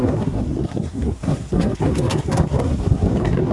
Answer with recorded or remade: remade